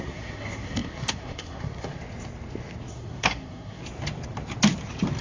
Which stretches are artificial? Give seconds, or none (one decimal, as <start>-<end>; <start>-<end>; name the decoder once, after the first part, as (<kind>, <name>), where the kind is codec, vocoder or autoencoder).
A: 0.0-2.0 (codec, SNAC); 2.9-3.8